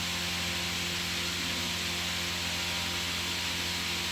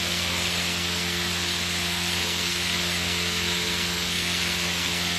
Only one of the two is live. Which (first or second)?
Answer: first